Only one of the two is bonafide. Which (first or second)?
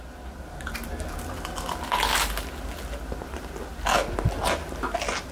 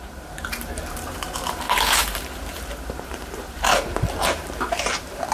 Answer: first